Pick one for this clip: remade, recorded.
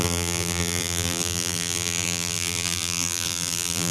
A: remade